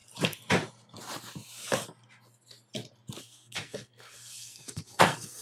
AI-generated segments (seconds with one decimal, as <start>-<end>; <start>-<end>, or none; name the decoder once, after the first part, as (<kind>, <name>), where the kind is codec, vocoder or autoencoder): 3.2-5.4 (codec, SNAC)